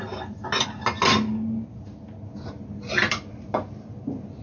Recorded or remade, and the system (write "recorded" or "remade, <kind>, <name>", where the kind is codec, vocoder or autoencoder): recorded